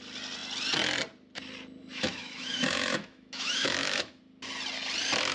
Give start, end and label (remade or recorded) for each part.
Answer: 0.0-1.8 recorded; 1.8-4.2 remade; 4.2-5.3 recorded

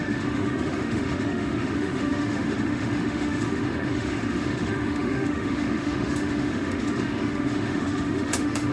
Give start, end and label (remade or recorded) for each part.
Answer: 0.0-8.7 remade

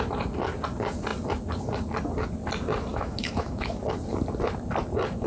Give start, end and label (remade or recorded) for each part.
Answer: 0.0-2.9 recorded; 2.9-3.8 remade; 3.8-5.3 recorded

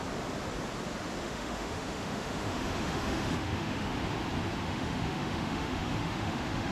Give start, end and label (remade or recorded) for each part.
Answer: 0.0-1.2 recorded; 1.2-3.9 remade; 3.9-4.6 recorded; 4.6-6.7 remade

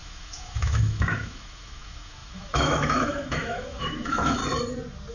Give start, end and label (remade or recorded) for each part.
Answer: 0.0-4.4 remade; 4.4-5.1 recorded

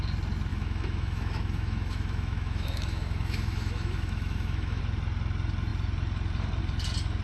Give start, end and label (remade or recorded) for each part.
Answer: 0.0-0.5 recorded; 0.5-4.8 remade; 4.8-7.2 recorded

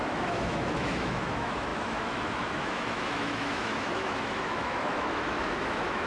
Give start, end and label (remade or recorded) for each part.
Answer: 0.0-6.1 remade